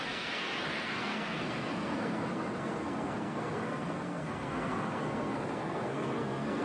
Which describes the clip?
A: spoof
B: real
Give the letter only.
A